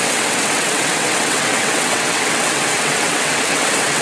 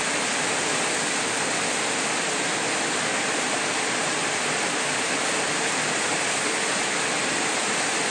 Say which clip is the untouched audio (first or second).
second